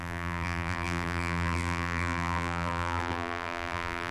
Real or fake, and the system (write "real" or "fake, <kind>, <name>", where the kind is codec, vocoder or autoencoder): fake, vocoder, BigVGAN v2